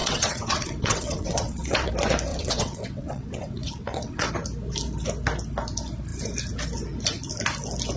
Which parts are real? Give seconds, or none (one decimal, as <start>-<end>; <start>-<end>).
1.9-2.3; 4.3-8.0